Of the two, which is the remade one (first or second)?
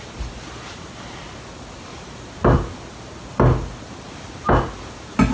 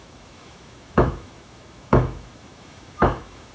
second